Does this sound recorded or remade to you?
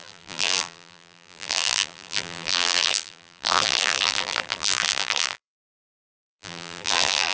remade